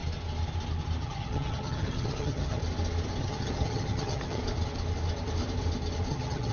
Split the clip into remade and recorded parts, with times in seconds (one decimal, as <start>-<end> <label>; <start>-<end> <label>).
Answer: 0.0-1.0 recorded; 1.0-2.6 remade; 2.6-3.2 recorded; 3.2-4.4 remade; 4.4-6.1 recorded; 6.1-6.5 remade